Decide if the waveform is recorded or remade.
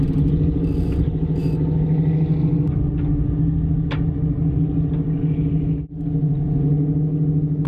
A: recorded